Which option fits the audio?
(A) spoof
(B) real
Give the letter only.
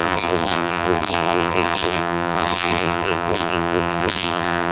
A